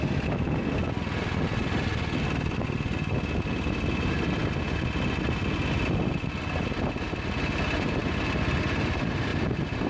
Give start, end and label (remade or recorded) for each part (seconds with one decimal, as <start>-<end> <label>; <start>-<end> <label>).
0.0-9.9 recorded